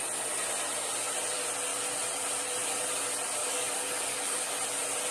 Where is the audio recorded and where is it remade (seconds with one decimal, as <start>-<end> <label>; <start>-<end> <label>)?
0.0-3.4 recorded; 3.4-4.5 remade; 4.5-5.1 recorded